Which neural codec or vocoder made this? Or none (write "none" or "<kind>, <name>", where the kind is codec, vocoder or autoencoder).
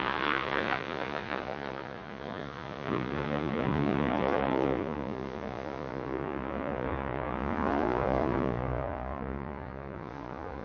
vocoder, Vocos